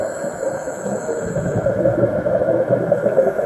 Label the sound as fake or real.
fake